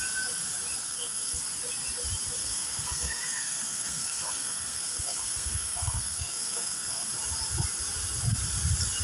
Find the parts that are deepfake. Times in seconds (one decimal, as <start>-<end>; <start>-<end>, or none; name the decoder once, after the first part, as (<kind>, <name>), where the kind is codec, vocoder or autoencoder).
0.8-1.4 (codec, SNAC); 2.4-7.1